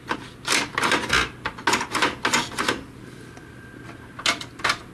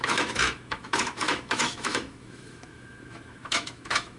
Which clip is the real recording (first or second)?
first